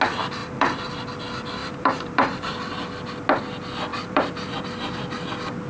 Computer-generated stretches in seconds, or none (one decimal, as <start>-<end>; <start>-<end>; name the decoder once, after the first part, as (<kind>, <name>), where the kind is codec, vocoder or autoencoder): 0.4-0.9 (vocoder, BigVGAN v2); 1.6-2.6; 3.9-4.9